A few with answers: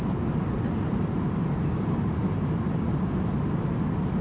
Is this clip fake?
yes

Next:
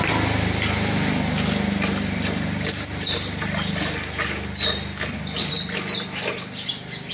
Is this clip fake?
no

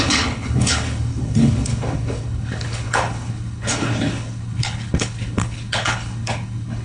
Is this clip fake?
yes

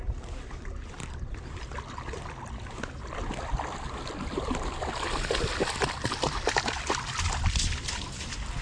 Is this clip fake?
no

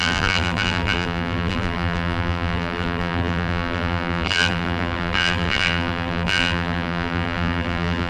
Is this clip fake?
yes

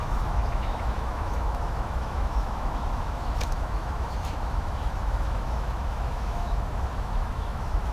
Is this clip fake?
yes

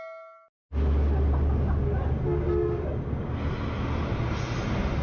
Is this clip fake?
no